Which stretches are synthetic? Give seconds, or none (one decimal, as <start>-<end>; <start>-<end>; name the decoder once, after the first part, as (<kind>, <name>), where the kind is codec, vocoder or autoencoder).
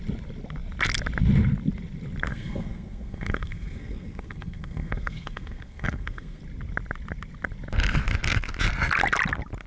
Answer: 2.3-6.4 (codec, SNAC)